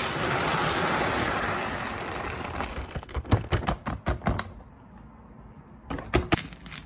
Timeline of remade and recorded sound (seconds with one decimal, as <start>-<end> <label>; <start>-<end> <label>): 0.0-2.7 recorded; 2.7-3.6 remade; 3.6-6.9 recorded

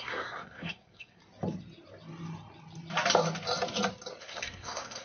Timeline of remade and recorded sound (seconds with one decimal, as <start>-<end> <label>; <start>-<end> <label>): 0.0-1.2 remade; 1.2-4.2 recorded; 4.2-5.0 remade

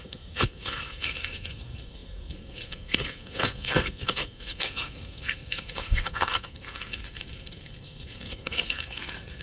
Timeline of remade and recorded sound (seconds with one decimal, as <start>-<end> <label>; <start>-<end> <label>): 0.0-9.4 remade

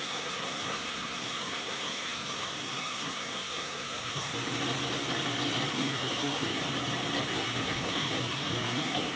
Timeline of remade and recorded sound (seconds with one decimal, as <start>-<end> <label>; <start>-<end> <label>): 0.0-4.3 remade; 4.3-5.7 recorded; 5.7-6.6 remade; 6.6-7.3 recorded; 7.3-9.2 remade